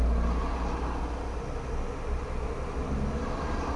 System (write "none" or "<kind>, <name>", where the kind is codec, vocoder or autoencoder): none